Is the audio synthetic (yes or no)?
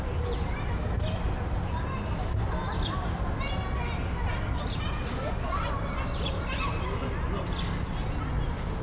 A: no